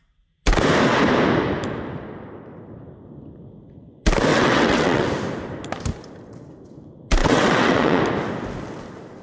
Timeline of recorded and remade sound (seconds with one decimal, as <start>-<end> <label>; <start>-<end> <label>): 0.0-4.3 recorded; 4.3-5.1 remade; 5.1-7.2 recorded; 7.2-8.0 remade; 8.0-9.2 recorded